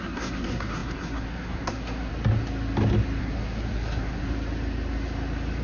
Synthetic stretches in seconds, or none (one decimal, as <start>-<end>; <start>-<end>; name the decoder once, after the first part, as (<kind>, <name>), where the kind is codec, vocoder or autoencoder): 0.0-2.1 (codec, SNAC); 3.2-4.2